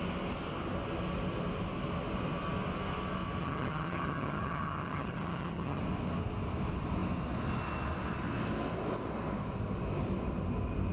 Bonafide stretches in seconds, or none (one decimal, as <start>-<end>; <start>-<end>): 0.0-3.4; 5.8-10.9